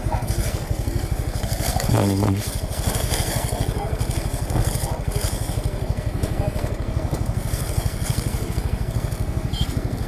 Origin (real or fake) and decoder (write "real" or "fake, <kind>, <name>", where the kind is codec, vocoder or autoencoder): fake, codec, SNAC